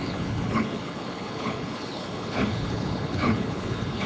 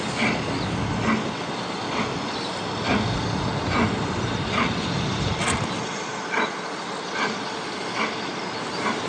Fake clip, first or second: first